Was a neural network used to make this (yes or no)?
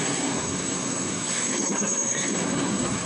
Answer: yes